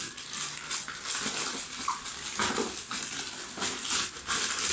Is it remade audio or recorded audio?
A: recorded